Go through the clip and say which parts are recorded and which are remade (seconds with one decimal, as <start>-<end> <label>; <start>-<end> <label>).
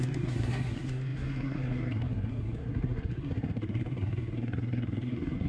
0.0-5.5 remade